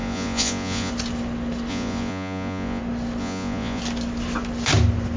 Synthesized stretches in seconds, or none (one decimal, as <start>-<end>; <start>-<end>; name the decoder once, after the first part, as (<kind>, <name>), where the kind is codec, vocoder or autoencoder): 0.0-0.9 (vocoder, Vocos); 1.7-2.8; 3.2-3.8